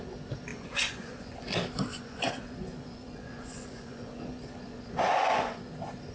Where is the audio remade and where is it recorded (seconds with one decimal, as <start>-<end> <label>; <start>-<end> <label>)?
0.0-0.5 recorded; 0.5-1.5 remade; 1.5-1.9 recorded; 1.9-5.6 remade; 5.6-6.1 recorded